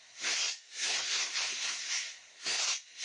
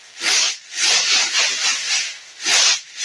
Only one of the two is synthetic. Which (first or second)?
first